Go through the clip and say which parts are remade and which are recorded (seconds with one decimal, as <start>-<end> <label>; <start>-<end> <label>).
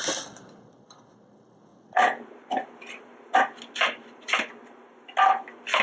0.0-1.7 recorded; 1.7-3.0 remade; 3.0-5.8 recorded